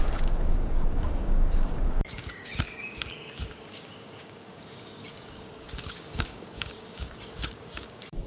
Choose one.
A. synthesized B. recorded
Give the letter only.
A